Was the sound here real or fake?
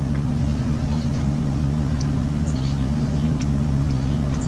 fake